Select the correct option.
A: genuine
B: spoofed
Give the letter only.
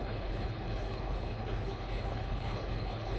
B